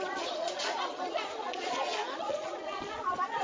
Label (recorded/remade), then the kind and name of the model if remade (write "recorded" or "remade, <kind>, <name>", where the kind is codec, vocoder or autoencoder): remade, vocoder, Vocos